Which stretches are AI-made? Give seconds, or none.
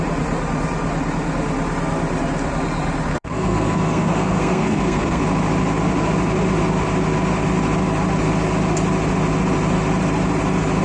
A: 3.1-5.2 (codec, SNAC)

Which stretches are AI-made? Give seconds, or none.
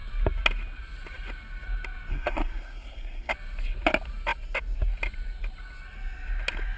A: 2.1-3.3 (codec, SNAC)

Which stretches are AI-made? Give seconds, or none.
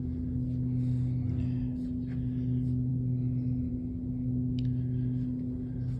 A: none